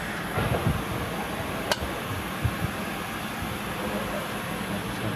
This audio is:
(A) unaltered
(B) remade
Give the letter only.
A